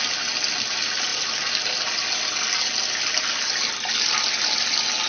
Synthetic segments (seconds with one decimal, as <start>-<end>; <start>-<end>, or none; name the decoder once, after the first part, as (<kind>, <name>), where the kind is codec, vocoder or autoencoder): none